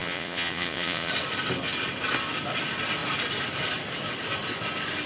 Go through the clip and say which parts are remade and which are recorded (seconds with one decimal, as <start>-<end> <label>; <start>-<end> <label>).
0.0-1.1 remade; 1.1-5.1 recorded